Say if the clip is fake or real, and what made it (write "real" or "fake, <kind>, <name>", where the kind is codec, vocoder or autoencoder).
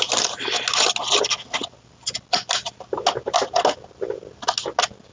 real